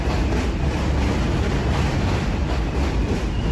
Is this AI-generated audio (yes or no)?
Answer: no